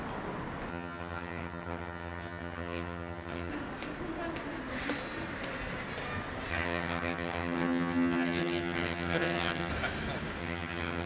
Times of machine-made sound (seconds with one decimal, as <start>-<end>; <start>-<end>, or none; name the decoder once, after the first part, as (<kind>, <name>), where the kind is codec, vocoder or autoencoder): 0.7-3.5 (vocoder, HiFi-GAN); 6.5-9.7; 10.4-11.1